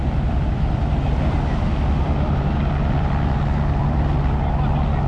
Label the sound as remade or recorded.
recorded